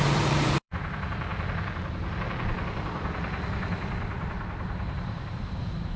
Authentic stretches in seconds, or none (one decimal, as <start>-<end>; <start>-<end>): 1.3-4.9